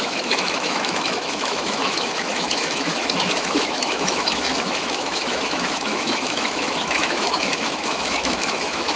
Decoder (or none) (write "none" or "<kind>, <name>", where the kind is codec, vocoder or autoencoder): autoencoder, DAC-VAE